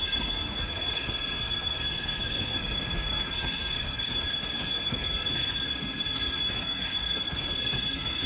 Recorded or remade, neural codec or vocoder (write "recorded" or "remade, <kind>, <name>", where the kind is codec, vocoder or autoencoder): remade, codec, SNAC